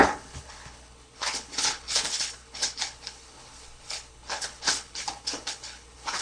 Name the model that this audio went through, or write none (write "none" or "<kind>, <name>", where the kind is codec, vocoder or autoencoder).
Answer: codec, HILCodec